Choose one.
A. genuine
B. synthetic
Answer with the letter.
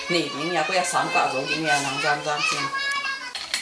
A